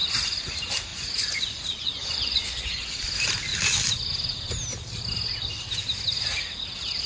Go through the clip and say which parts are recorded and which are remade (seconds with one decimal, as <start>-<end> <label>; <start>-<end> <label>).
0.0-0.9 recorded; 0.9-2.9 remade; 2.9-7.1 recorded